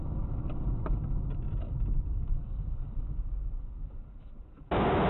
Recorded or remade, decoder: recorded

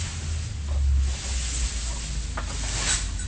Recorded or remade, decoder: recorded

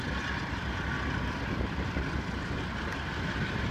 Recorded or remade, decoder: recorded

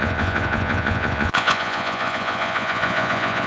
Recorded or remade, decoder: remade, vocoder, Vocos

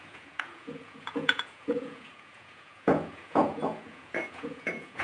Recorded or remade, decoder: remade, vocoder, Vocos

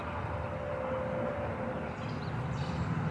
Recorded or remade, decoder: recorded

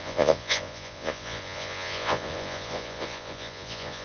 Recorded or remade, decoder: remade, vocoder, Vocos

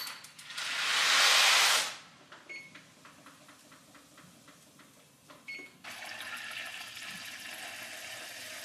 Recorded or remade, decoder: recorded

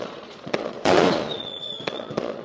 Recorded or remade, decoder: remade, vocoder, Vocos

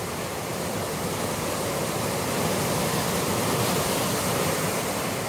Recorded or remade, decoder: recorded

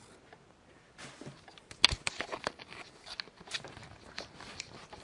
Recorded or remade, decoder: recorded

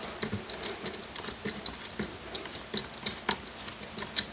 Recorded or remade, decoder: recorded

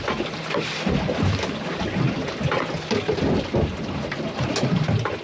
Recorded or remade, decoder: recorded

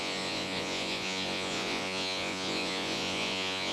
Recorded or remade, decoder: remade, vocoder, Vocos